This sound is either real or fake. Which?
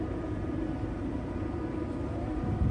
fake